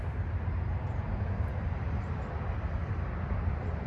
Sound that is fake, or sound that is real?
real